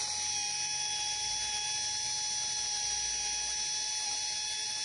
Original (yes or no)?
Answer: yes